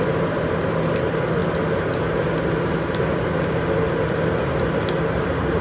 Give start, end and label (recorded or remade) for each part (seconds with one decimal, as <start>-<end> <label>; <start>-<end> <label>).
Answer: 0.0-5.6 recorded